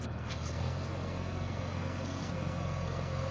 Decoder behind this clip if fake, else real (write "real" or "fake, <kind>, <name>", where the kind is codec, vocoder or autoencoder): fake, codec, SNAC